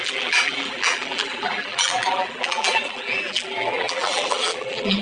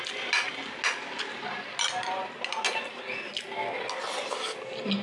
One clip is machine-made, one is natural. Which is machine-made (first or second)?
first